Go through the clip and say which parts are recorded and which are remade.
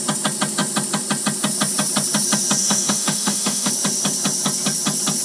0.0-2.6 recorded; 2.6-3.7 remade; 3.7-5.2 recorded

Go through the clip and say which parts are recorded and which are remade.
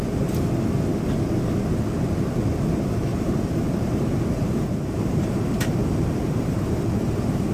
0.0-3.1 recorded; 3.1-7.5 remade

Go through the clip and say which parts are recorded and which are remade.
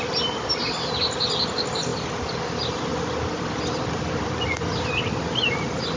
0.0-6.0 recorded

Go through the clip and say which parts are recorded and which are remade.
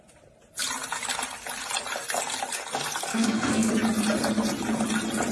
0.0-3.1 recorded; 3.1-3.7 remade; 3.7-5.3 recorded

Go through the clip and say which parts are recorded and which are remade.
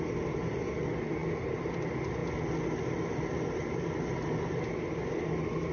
0.0-5.7 recorded